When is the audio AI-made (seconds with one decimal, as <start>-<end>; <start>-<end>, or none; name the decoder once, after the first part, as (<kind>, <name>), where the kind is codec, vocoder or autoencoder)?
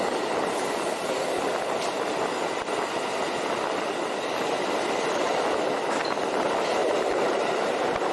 6.8-8.1 (vocoder, BigVGAN v2)